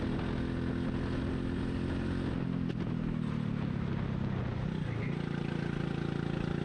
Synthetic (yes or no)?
no